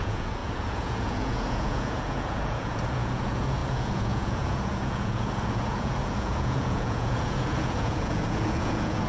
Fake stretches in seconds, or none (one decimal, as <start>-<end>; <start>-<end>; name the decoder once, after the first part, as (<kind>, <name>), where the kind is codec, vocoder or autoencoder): 0.0-9.1 (vocoder, Vocos)